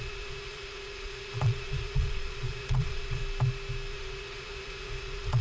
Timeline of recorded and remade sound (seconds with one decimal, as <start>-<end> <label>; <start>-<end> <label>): 0.0-3.2 remade; 3.2-3.9 recorded; 3.9-5.4 remade